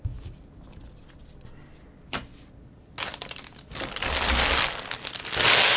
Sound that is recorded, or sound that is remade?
recorded